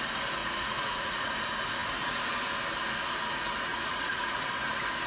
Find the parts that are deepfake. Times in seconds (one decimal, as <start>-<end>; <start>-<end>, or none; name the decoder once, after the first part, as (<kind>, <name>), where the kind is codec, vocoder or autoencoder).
0.4-1.3 (vocoder, Vocos); 3.7-4.4